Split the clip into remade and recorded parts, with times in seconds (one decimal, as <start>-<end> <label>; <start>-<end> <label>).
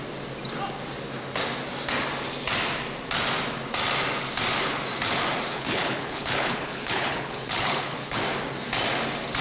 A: 0.0-5.5 recorded; 5.5-8.2 remade; 8.2-9.4 recorded